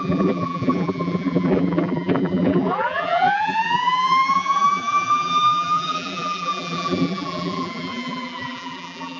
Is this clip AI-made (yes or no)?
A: yes